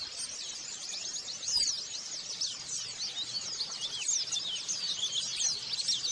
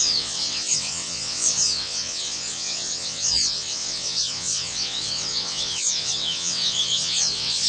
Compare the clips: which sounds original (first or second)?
first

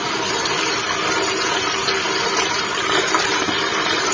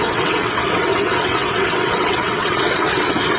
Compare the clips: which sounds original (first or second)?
first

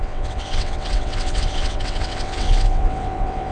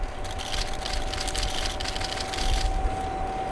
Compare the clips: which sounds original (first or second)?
second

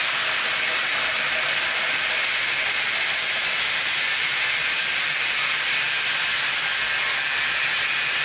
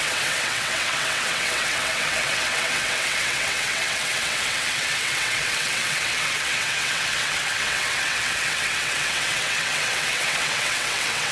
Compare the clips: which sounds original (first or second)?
first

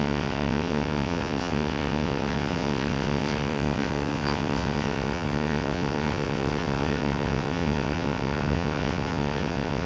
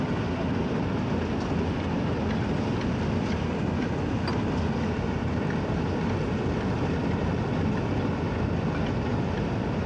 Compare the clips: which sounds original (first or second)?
second